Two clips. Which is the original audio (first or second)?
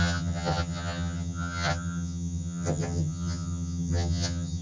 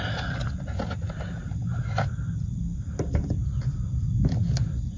second